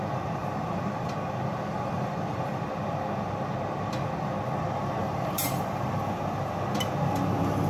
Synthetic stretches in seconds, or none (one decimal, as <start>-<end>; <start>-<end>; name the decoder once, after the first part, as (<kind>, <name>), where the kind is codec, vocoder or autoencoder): 0.4-1.1 (vocoder, BigVGAN v2); 1.5-2.6; 5.0-5.6